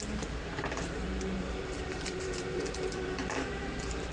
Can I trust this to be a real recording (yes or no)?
no